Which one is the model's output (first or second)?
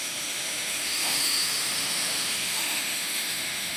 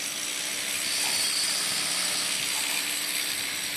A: first